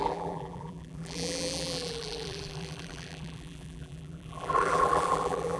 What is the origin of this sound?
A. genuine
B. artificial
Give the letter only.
B